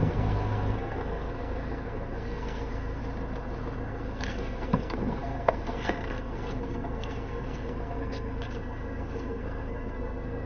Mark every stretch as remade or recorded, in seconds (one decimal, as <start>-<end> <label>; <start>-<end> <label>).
0.0-3.0 remade; 3.0-3.9 recorded; 3.9-10.5 remade